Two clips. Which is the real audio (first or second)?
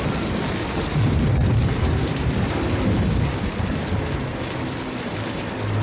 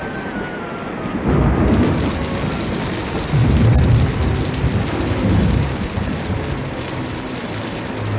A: second